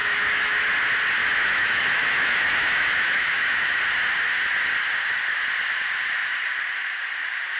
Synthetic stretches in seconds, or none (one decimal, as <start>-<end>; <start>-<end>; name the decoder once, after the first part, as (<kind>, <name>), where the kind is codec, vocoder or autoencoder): 0.0-0.6 (autoencoder, DAC-VAE); 1.2-3.8